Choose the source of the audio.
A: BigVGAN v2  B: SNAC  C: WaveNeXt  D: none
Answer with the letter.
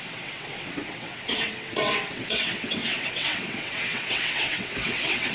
C